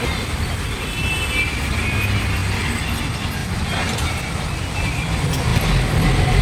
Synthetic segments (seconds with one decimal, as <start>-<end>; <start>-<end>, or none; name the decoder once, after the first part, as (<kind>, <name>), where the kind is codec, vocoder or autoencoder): 0.0-2.4 (vocoder, BigVGAN v2); 3.0-5.5